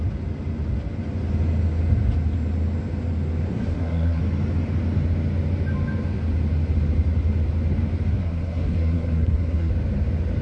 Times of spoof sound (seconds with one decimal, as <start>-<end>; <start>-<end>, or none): 3.5-4.2; 8.2-9.7